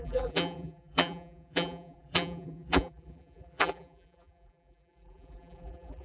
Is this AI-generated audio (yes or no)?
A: yes